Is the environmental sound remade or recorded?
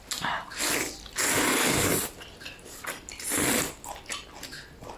recorded